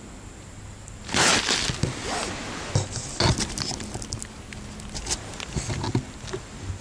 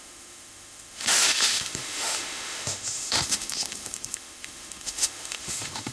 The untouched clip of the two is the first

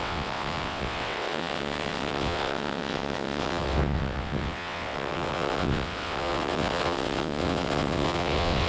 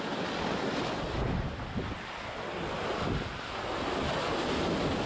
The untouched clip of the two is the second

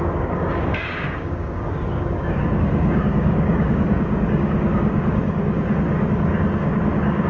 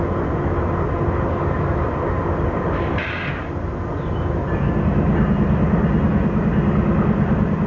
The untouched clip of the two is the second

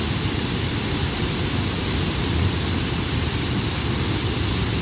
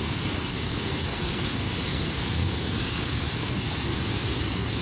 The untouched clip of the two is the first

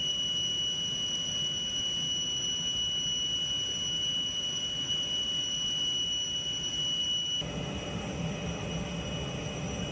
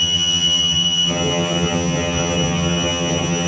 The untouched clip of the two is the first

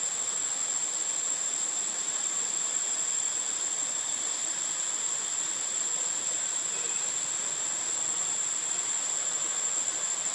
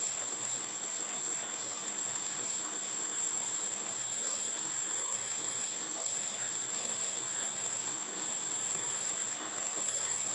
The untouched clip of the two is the first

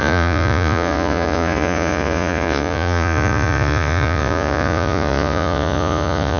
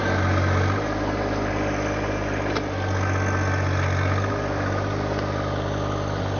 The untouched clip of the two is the second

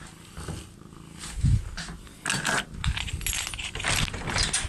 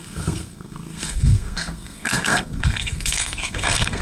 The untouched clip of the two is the first